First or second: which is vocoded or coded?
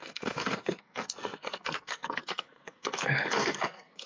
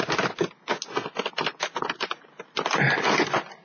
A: first